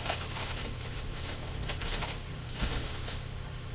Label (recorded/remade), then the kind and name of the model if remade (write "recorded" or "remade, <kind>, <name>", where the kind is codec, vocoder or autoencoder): remade, autoencoder, DAC-VAE